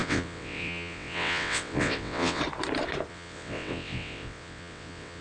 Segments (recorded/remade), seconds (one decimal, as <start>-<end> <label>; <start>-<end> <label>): 0.0-2.4 remade; 2.4-3.1 recorded; 3.1-5.2 remade